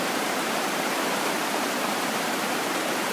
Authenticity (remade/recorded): remade